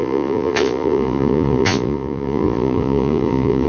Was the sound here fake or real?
fake